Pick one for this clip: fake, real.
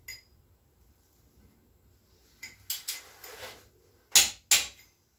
real